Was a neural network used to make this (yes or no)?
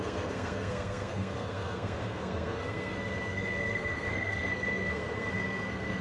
yes